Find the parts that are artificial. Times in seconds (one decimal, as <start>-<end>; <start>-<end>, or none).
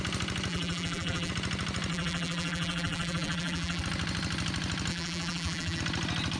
0.5-1.3; 1.9-3.8; 4.9-5.8